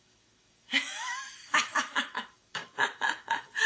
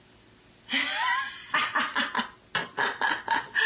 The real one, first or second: second